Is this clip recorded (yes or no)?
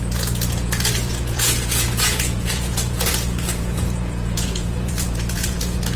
no